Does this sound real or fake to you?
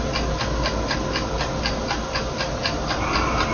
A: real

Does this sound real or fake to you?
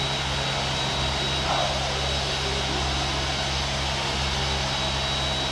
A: real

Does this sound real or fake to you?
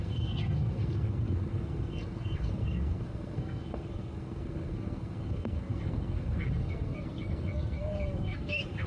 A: fake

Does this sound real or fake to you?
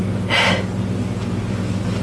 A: real